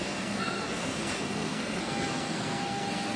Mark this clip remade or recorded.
remade